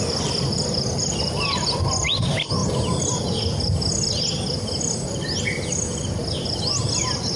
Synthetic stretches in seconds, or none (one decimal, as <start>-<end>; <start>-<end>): none